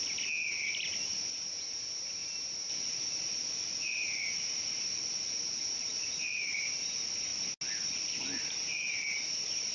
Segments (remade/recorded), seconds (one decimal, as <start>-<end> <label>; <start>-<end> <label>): 0.0-9.7 recorded